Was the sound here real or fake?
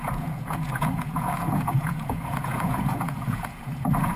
fake